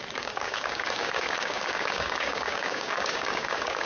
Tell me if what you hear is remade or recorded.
remade